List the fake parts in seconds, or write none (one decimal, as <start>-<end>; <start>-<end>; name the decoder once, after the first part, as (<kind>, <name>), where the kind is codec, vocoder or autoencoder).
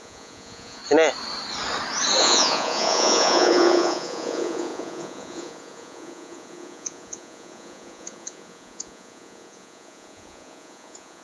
0.0-0.8 (vocoder, Vocos); 2.2-11.2